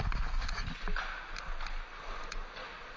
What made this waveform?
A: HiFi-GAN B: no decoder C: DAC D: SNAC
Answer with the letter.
B